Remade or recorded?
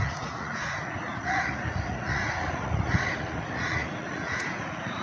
remade